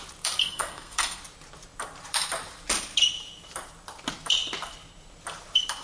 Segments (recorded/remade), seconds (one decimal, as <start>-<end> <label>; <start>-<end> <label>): 0.0-0.4 recorded; 0.4-1.2 remade; 1.2-5.8 recorded